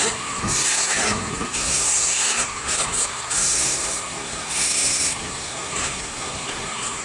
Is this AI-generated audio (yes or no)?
yes